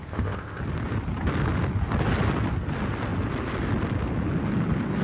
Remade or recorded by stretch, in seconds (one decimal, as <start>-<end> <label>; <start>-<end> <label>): 0.0-0.6 remade; 0.6-5.0 recorded